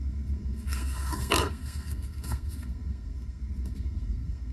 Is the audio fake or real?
fake